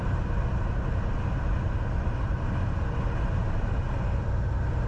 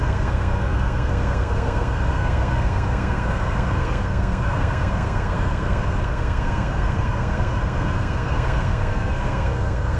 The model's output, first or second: second